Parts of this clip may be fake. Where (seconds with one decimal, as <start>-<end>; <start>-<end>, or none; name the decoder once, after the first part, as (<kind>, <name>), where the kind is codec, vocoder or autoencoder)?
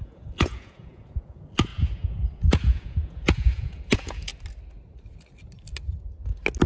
0.0-4.3 (vocoder, Vocos)